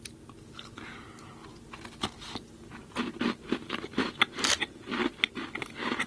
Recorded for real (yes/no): yes